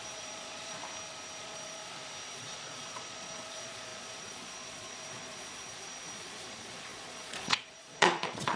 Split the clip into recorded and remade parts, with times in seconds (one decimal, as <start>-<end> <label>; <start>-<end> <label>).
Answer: 0.0-0.8 remade; 0.8-1.4 recorded; 1.4-1.8 remade; 1.8-2.3 recorded; 2.3-8.6 remade